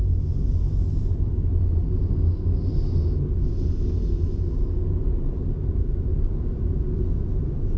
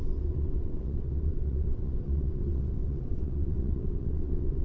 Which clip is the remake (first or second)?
second